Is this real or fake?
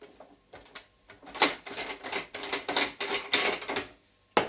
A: real